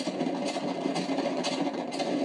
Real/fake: fake